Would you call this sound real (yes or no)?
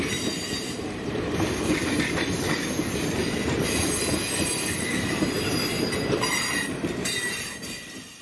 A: no